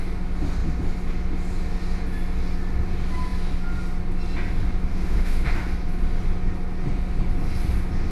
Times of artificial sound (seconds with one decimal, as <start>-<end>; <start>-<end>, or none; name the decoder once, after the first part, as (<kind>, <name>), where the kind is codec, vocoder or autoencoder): 4.9-5.5 (autoencoder, DAC-VAE)